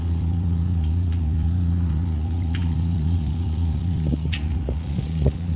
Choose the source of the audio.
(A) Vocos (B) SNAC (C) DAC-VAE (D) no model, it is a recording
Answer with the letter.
A